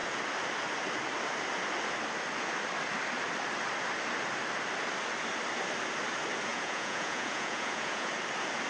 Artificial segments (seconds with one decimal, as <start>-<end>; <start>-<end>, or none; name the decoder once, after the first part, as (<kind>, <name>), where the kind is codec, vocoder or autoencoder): 6.5-8.1 (vocoder, Vocos)

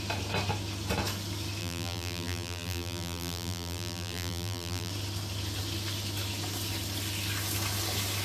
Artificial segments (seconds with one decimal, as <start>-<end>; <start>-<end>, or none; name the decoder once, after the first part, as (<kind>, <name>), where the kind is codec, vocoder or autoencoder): 1.6-4.9 (vocoder, BigVGAN v2)

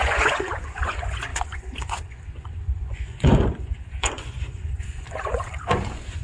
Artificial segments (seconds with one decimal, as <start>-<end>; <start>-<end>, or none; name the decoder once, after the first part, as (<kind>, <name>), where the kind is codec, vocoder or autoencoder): 0.0-6.2 (vocoder, Vocos)

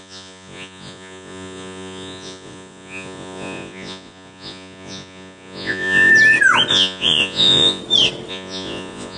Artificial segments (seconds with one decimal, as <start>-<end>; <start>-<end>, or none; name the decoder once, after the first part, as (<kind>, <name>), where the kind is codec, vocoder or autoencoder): 0.0-6.1 (vocoder, Vocos); 6.7-7.8; 8.3-9.2

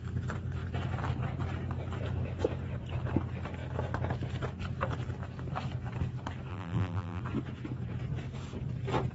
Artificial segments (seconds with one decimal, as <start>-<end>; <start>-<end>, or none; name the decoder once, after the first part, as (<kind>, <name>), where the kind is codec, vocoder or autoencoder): 6.5-7.2 (vocoder, BigVGAN v2)

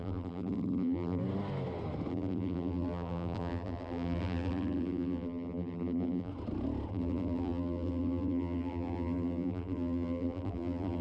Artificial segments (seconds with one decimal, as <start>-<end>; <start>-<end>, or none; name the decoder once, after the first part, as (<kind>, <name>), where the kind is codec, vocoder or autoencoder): 0.0-1.2 (vocoder, BigVGAN v2); 2.1-6.3; 6.9-11.0